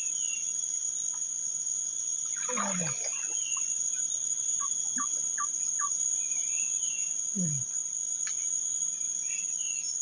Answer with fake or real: real